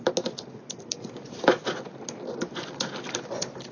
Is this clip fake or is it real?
real